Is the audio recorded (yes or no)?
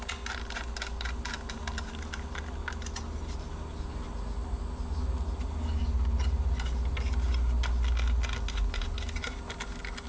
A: yes